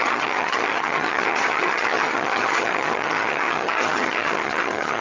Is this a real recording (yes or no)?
no